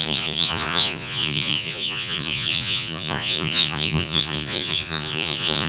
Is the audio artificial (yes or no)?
yes